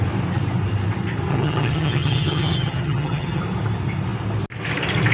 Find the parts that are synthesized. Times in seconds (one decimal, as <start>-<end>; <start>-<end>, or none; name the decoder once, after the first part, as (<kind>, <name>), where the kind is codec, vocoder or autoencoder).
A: 1.3-3.4 (vocoder, HiFi-GAN)